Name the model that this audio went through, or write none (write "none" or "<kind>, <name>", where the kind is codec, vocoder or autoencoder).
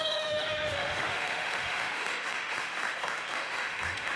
autoencoder, DAC-VAE